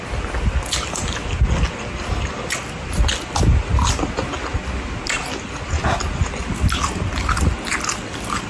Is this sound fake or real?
real